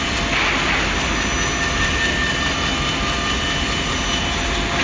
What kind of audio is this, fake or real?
real